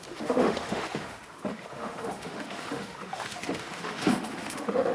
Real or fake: fake